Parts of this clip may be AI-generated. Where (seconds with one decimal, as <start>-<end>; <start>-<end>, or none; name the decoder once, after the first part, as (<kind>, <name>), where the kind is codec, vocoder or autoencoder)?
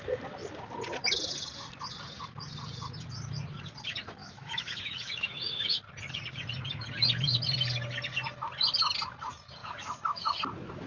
4.2-5.8 (autoencoder, DAC-VAE); 9.6-10.4